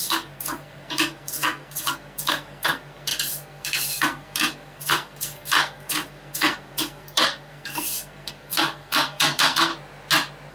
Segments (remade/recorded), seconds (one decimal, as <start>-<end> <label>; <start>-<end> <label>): 0.0-9.7 remade; 9.7-10.5 recorded

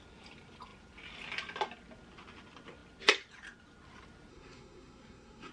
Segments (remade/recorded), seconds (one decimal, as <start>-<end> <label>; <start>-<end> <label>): 0.0-4.3 recorded; 4.3-5.5 remade